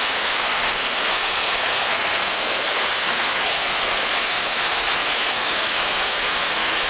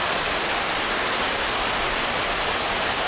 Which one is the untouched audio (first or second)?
second